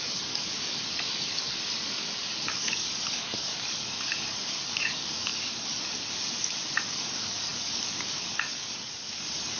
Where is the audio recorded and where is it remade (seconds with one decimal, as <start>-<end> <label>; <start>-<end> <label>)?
0.0-9.6 remade